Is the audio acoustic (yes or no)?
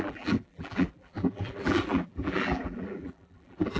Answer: no